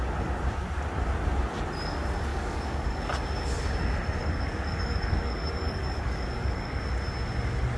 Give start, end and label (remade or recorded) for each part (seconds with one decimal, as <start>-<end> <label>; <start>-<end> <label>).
0.0-2.3 recorded; 2.3-3.0 remade; 3.0-4.2 recorded; 4.2-6.8 remade; 6.8-7.8 recorded